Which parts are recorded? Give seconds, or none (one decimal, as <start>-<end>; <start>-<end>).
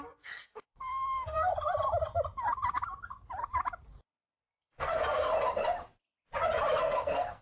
1.5-4.4; 5.3-6.8